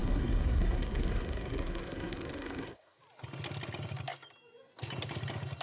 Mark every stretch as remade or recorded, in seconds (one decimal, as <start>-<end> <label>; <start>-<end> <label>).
0.0-3.0 remade; 3.0-5.6 recorded